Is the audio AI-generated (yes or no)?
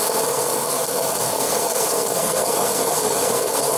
yes